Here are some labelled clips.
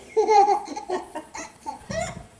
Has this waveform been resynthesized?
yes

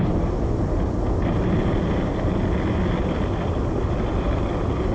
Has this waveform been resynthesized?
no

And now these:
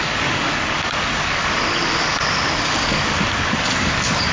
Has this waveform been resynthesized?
yes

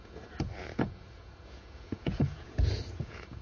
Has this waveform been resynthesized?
yes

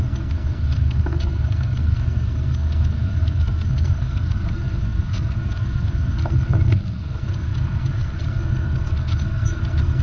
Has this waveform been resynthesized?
yes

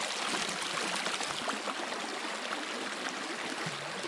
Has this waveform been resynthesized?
no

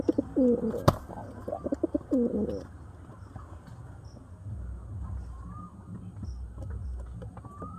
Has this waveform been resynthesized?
no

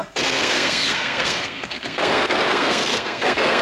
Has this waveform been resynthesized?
yes